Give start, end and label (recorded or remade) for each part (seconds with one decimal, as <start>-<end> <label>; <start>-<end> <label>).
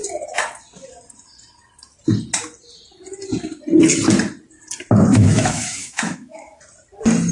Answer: 0.0-5.1 recorded; 5.1-6.6 remade; 6.6-7.3 recorded